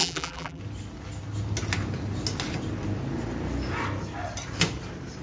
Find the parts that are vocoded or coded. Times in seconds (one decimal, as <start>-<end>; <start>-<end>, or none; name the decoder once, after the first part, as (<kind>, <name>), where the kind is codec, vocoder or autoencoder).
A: 0.0-0.6 (vocoder, BigVGAN v2)